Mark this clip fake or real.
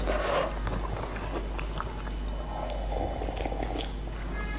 real